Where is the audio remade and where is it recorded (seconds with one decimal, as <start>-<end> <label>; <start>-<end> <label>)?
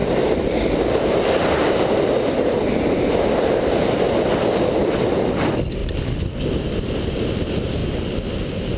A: 0.0-8.8 recorded